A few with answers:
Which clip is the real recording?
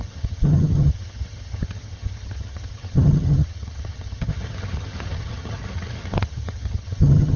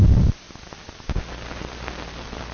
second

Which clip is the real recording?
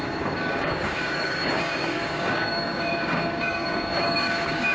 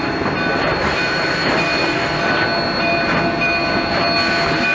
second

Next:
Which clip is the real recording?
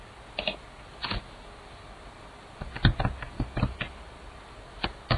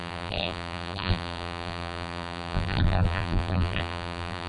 first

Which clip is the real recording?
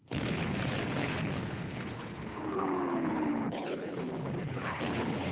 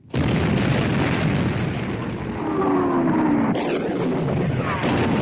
second